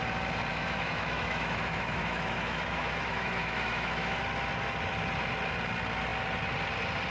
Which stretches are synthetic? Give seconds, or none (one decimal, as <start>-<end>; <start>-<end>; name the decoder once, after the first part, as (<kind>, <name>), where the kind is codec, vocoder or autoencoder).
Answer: 0.5-4.2 (autoencoder, DAC-VAE)